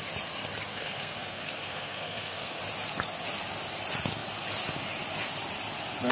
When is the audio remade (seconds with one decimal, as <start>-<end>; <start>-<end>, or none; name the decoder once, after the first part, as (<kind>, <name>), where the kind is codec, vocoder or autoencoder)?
0.7-2.6 (codec, SNAC)

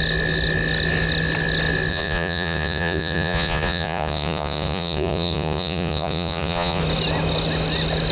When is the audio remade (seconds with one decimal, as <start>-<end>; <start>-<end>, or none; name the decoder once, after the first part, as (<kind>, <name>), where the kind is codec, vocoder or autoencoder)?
1.9-6.8 (vocoder, Vocos)

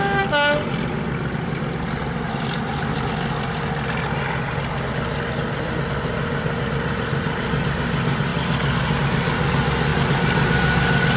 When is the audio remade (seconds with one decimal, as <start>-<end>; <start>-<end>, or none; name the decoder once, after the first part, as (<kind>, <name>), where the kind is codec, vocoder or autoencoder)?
none

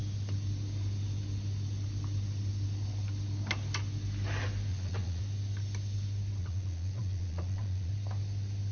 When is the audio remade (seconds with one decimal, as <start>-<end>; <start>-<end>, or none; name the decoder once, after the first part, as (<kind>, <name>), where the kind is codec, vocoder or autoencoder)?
4.7-5.2 (vocoder, Vocos); 6.4-7.9

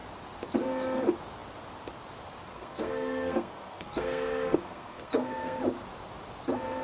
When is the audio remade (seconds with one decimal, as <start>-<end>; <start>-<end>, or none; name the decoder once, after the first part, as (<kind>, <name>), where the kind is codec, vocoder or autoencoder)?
2.5-5.6 (codec, SNAC)

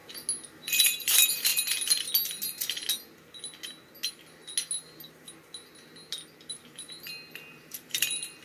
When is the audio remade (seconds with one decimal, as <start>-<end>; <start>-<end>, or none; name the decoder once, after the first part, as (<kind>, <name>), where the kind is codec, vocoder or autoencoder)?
0.8-1.5 (vocoder, BigVGAN v2); 6.5-8.4

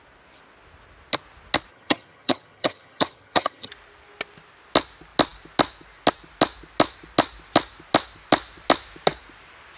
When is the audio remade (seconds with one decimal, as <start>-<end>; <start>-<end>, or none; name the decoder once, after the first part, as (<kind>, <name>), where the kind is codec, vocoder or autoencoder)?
1.7-3.7 (vocoder, HiFi-GAN)